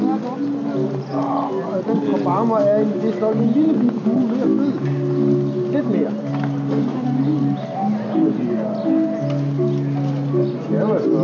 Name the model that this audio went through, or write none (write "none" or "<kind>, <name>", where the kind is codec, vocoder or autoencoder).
none